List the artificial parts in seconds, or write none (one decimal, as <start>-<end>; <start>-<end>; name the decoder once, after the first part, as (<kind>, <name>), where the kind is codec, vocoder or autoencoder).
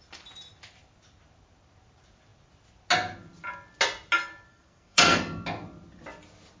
4.5-5.2 (codec, SNAC)